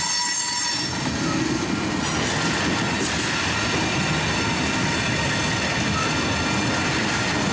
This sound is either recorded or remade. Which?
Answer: recorded